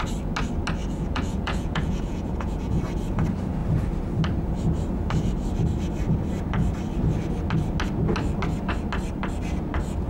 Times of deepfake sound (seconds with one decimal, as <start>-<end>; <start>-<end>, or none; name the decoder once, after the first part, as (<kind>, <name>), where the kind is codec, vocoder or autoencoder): 0.8-2.8 (vocoder, Vocos)